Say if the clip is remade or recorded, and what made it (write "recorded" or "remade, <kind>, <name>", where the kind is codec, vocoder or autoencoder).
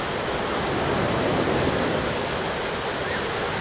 recorded